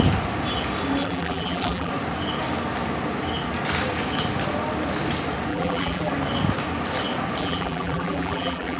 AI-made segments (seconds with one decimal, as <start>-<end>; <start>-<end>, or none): 1.0-1.9; 5.5-6.1; 7.4-8.8